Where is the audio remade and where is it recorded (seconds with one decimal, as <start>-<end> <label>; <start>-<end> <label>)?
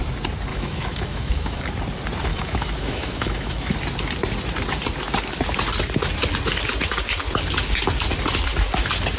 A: 0.0-0.5 recorded; 0.5-1.6 remade; 1.6-2.3 recorded; 2.3-3.8 remade; 3.8-9.2 recorded